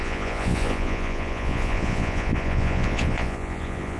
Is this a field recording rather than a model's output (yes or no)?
no